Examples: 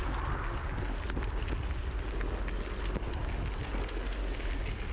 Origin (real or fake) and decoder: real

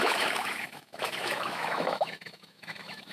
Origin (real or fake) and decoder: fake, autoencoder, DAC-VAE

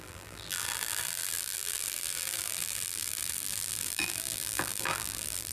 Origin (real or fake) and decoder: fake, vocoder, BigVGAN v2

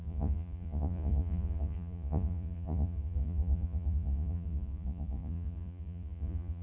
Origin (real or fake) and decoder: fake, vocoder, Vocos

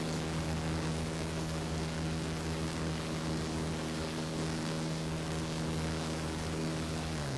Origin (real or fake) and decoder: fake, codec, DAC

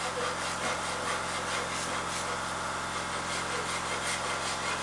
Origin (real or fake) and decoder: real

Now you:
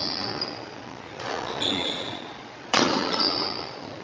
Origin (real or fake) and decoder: fake, vocoder, Vocos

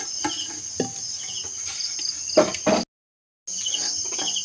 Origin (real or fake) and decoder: real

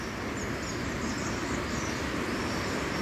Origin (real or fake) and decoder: real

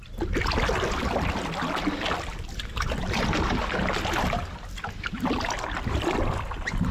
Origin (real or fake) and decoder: real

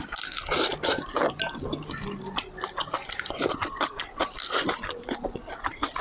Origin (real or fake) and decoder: real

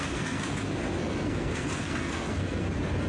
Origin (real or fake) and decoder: fake, codec, SNAC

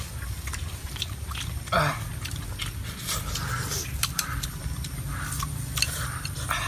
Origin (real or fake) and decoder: real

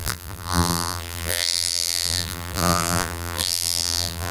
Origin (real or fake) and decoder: fake, vocoder, BigVGAN v2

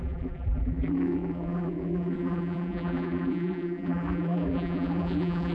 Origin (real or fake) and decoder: fake, vocoder, BigVGAN v2